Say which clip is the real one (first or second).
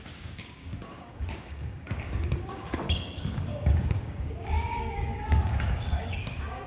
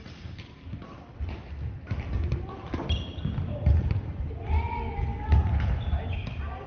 second